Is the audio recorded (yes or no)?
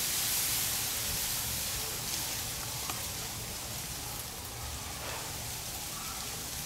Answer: yes